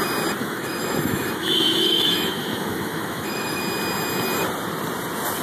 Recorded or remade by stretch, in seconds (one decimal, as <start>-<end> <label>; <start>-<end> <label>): 0.0-0.4 recorded; 0.4-3.6 remade; 3.6-5.4 recorded